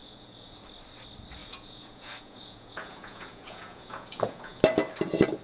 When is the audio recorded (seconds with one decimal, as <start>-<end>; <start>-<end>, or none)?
0.6-1.4; 4.6-5.4